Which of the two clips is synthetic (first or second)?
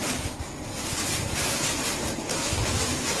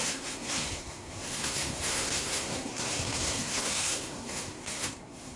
second